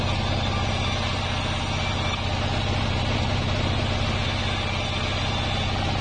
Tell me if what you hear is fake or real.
real